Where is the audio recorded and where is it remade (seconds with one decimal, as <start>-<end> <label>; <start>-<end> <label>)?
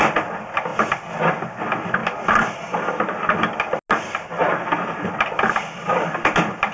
0.0-6.7 recorded